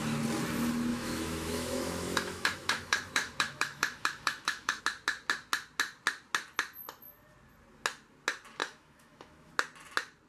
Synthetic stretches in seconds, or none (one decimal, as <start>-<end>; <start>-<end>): 0.9-4.8; 8.6-9.5